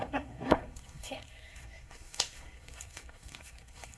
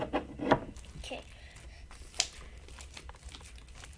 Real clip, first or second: second